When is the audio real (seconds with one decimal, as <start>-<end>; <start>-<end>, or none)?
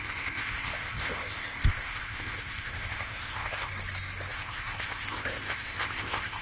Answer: 3.7-4.3